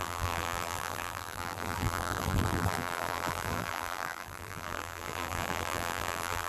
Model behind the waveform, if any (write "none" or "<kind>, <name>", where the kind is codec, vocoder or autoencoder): vocoder, BigVGAN v2